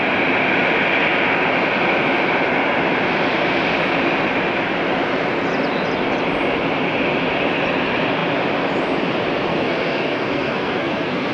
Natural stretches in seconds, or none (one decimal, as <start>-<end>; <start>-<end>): 0.0-9.5